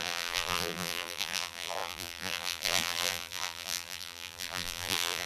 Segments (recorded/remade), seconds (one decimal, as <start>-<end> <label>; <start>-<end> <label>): 0.0-5.3 remade